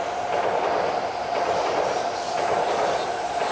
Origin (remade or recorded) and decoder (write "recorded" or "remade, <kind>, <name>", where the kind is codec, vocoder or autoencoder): recorded